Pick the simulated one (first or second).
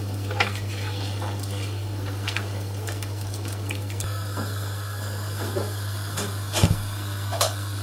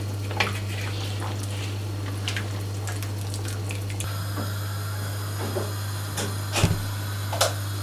first